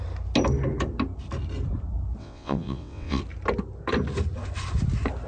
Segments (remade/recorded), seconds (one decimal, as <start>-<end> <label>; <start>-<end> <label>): 0.0-2.2 recorded; 2.2-3.2 remade; 3.2-5.3 recorded